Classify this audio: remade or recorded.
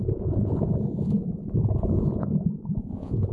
remade